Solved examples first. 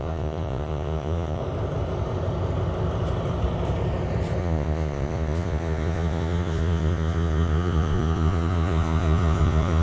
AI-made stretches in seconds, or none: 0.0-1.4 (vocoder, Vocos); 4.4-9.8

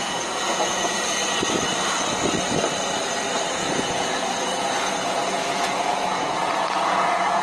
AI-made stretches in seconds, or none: 0.0-1.2 (vocoder, Vocos); 3.5-7.4

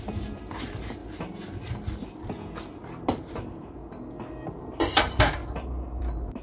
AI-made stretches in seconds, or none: 0.0-1.0 (vocoder, BigVGAN v2); 3.2-3.8; 4.6-5.4; 6.0-6.4

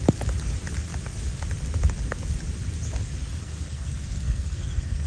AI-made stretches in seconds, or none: 3.4-5.1 (codec, SNAC)

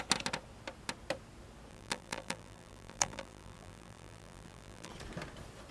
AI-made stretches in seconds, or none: 1.7-4.9 (vocoder, BigVGAN v2)

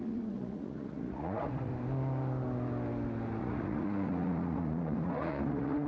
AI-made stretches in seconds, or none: 0.0-1.7 (vocoder, Vocos); 3.4-5.9